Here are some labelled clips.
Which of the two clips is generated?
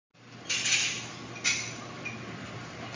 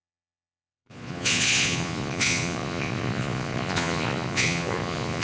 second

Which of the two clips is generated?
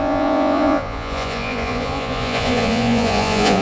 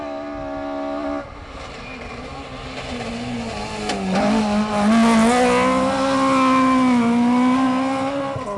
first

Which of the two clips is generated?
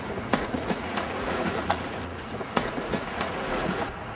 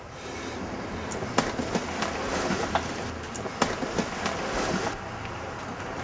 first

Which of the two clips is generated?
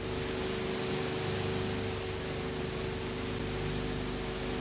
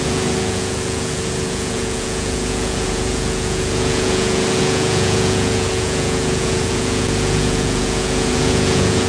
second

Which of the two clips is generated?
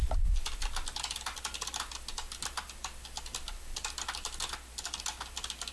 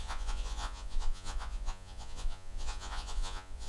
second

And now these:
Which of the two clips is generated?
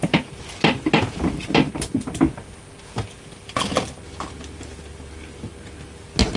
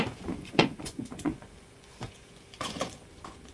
second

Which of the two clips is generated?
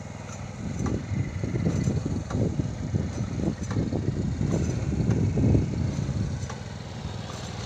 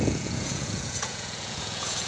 second